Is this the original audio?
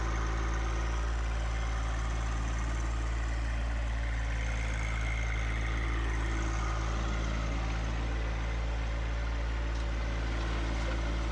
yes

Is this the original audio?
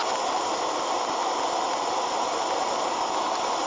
yes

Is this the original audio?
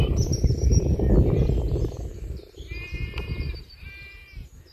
no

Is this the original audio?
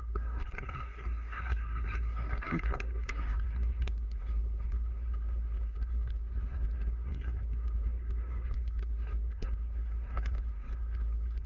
no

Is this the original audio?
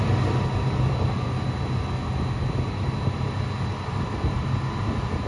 yes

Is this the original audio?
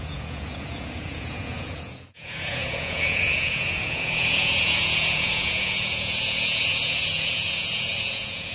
no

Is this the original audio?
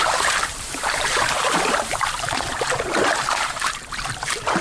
no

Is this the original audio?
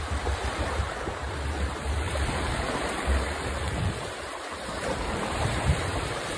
no